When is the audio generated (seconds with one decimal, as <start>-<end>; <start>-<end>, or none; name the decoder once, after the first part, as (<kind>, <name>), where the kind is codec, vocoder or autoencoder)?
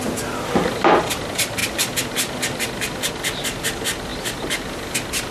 none